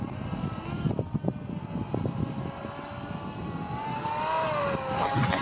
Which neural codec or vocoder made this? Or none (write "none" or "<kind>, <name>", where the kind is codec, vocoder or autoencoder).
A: none